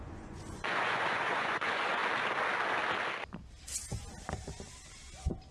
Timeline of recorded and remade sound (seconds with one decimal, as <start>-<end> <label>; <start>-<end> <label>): 0.0-2.0 remade; 2.0-5.5 recorded